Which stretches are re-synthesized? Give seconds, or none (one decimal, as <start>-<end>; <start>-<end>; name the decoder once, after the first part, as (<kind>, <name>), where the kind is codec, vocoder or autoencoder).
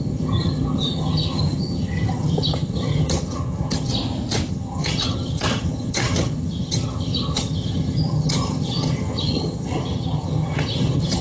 0.0-3.9 (vocoder, HiFi-GAN); 4.5-11.2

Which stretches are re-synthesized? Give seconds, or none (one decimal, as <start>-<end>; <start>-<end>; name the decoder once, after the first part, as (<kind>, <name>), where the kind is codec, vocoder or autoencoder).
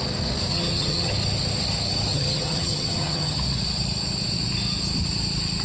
0.5-1.1 (vocoder, HiFi-GAN); 2.1-3.4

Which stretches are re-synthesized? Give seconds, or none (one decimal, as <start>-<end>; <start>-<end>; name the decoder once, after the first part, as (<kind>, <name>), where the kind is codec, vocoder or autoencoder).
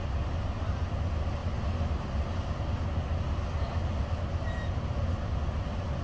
none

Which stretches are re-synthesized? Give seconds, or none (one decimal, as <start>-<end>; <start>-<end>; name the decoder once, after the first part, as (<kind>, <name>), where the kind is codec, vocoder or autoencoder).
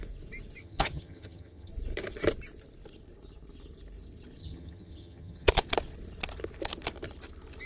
0.6-1.7 (vocoder, HiFi-GAN); 4.4-5.5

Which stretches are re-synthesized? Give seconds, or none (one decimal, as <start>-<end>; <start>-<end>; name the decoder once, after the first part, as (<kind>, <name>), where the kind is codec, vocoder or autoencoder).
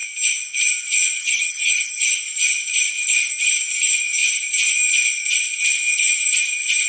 1.2-2.1 (vocoder, HiFi-GAN)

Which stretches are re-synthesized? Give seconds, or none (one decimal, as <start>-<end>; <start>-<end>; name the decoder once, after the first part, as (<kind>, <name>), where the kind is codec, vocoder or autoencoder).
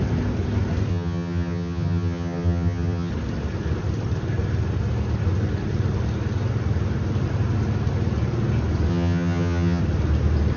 0.9-3.1 (vocoder, HiFi-GAN); 8.9-9.8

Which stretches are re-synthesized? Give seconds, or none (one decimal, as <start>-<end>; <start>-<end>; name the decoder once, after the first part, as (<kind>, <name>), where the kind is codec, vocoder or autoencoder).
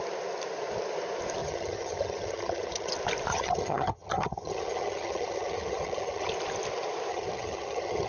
1.4-2.9 (vocoder, HiFi-GAN); 3.3-6.3; 7.1-8.1